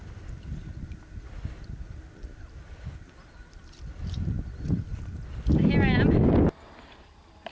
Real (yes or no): yes